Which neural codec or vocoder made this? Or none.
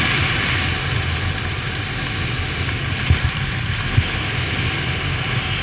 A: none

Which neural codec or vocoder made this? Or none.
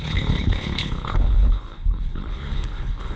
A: codec, HILCodec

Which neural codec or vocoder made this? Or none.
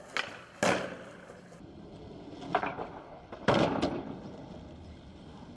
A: none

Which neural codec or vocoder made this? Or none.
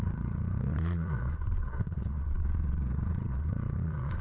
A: vocoder, Vocos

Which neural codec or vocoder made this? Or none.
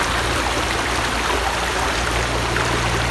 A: none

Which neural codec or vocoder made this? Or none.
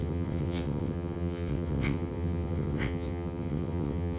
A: vocoder, WaveNeXt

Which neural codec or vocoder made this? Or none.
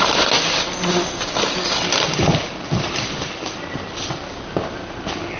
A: none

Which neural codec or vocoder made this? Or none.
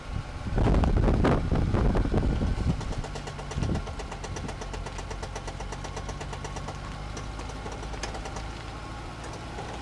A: none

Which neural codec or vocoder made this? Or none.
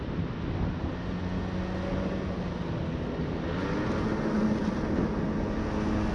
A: none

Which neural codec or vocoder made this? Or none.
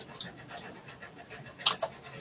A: none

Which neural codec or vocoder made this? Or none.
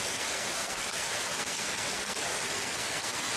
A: codec, SNAC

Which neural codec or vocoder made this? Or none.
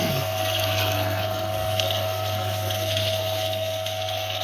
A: codec, SNAC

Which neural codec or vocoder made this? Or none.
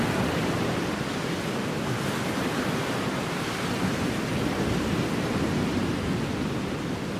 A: none